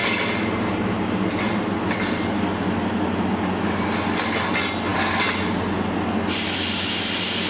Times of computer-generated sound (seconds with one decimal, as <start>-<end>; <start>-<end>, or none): none